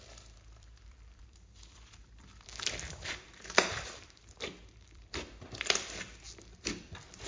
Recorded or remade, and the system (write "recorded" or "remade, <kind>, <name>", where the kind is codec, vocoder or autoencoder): remade, vocoder, BigVGAN v2